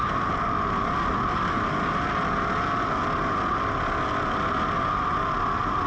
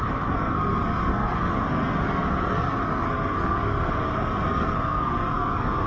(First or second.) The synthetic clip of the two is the second